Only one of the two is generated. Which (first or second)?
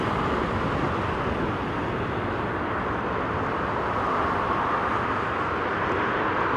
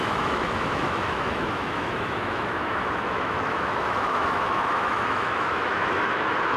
second